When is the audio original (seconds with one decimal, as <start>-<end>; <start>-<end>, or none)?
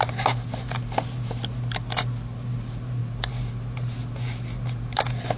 0.0-5.4